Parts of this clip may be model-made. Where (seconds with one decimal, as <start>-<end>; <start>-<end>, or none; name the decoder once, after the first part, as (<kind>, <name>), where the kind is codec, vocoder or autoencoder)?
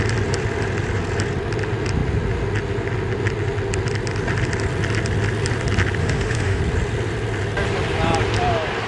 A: 6.0-6.6 (autoencoder, DAC-VAE)